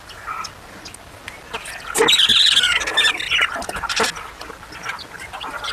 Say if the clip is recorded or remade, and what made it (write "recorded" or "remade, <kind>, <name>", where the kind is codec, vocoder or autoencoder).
recorded